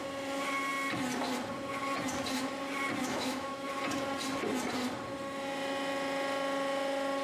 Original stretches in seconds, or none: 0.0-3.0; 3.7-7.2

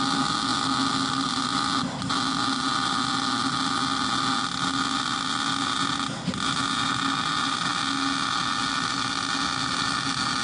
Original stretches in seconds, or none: 0.0-10.4

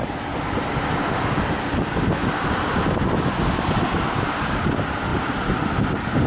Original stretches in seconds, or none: 0.0-5.1

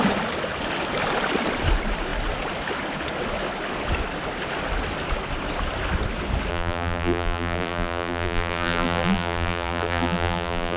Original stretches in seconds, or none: 0.0-6.5

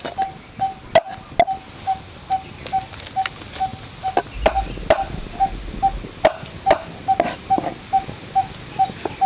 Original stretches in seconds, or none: 0.0-9.3